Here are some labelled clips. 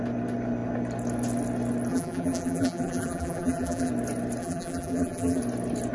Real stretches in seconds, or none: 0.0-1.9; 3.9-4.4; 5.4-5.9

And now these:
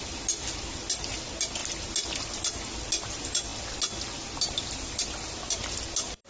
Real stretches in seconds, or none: 0.0-6.3

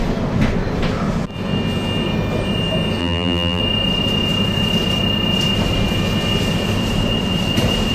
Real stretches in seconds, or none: 0.0-3.0; 3.6-7.9

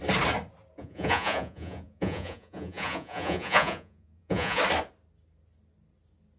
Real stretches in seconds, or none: 0.0-0.8; 4.6-6.4

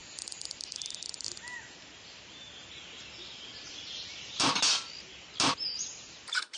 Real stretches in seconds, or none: 0.0-6.6

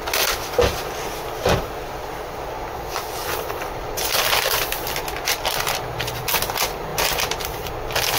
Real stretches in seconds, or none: 0.0-3.2; 5.4-6.9; 7.7-8.2

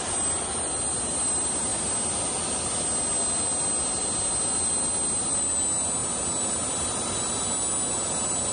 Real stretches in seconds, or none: 0.0-8.5